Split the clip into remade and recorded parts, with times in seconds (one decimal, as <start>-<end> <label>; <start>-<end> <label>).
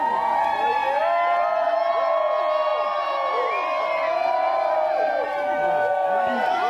0.0-2.7 recorded; 2.7-5.1 remade; 5.1-6.7 recorded